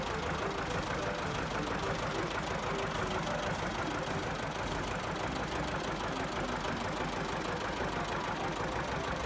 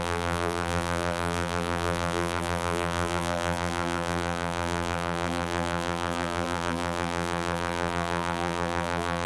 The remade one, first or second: second